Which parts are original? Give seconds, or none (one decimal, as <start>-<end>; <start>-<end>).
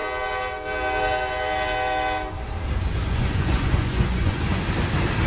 0.0-3.0; 4.6-5.3